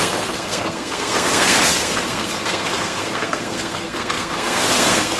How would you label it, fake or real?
fake